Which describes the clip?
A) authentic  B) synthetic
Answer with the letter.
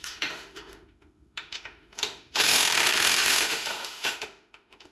B